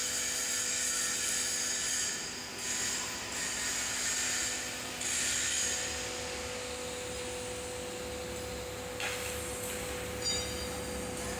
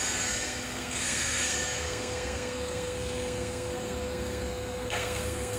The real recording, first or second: first